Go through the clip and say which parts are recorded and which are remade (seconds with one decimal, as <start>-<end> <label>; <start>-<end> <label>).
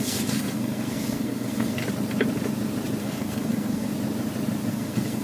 0.0-1.8 remade; 1.8-3.0 recorded; 3.0-3.9 remade; 3.9-4.7 recorded; 4.7-5.2 remade